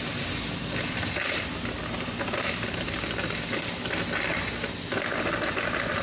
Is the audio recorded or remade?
recorded